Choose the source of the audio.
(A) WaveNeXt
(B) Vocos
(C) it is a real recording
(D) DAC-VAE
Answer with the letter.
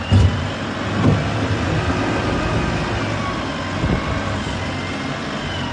C